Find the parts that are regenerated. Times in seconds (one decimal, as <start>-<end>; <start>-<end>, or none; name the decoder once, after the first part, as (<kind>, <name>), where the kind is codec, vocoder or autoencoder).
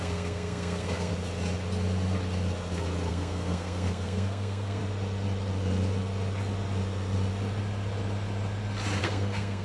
0.0-1.1 (codec, SNAC); 3.1-4.8; 9.0-9.6